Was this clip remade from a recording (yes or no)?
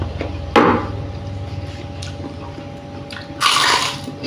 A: no